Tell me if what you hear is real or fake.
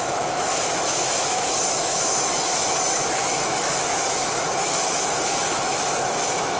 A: fake